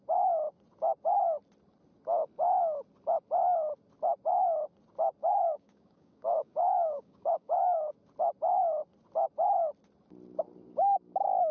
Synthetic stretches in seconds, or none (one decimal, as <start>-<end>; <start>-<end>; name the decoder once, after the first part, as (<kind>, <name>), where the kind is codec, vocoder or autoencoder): 5.2-7.9 (codec, DAC)